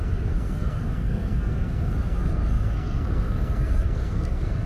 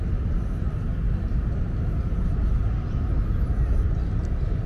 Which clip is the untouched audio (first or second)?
second